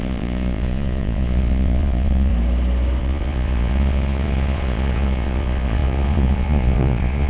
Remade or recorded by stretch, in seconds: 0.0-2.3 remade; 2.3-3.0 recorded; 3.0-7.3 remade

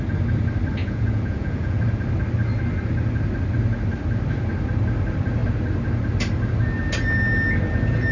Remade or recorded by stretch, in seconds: 0.0-0.8 recorded; 0.8-1.8 remade; 1.8-8.1 recorded

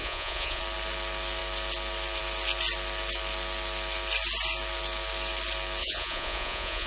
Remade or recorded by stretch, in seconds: 0.0-0.6 remade; 0.6-5.8 recorded; 5.8-6.9 remade

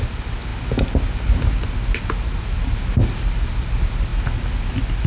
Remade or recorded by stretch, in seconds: 0.0-5.1 recorded

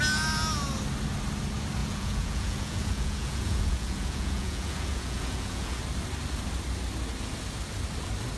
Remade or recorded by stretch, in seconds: 0.0-1.8 recorded; 1.8-5.8 remade; 5.8-8.4 recorded

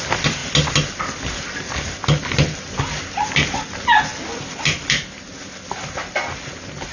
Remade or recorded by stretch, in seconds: 0.0-6.9 recorded